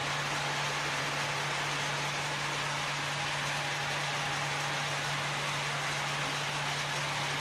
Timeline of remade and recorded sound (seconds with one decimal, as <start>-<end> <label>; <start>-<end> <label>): 0.0-7.4 recorded